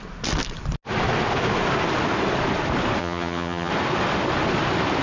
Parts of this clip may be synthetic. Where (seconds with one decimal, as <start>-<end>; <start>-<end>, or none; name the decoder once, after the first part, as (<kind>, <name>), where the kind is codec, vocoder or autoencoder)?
3.0-3.7 (vocoder, HiFi-GAN)